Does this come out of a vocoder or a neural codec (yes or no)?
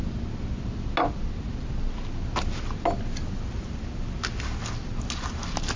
no